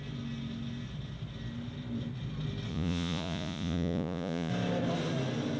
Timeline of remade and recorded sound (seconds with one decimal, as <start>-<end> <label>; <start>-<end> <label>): 0.0-2.7 recorded; 2.7-4.5 remade; 4.5-5.6 recorded